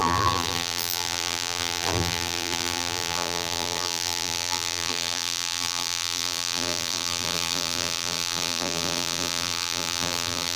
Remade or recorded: remade